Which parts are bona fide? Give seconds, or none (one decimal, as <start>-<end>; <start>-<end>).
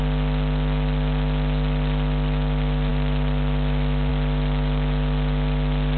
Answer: 0.0-6.0